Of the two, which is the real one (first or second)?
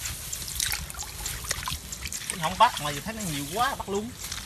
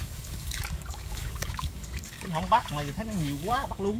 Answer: first